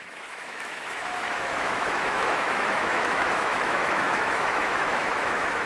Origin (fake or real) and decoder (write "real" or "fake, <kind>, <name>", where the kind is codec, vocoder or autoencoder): fake, autoencoder, DAC-VAE